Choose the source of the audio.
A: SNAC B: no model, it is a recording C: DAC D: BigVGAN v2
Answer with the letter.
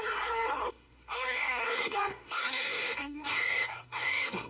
A